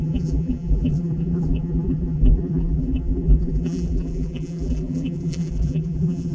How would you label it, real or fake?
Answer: fake